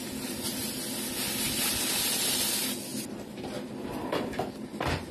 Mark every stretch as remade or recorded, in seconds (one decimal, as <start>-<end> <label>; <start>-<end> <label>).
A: 0.0-0.6 recorded; 0.6-1.1 remade; 1.1-2.9 recorded; 2.9-4.2 remade; 4.2-5.1 recorded